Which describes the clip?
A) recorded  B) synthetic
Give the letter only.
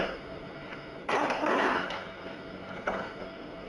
B